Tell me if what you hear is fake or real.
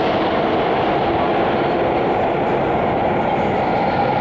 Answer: real